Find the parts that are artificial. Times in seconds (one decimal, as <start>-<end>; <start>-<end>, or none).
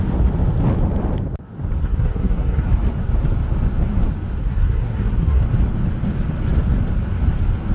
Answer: 1.8-2.6; 4.4-5.4